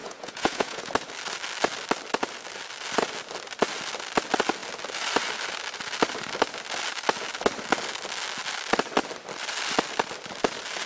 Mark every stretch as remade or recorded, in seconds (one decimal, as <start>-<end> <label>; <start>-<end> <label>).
0.0-0.9 remade; 0.9-10.9 recorded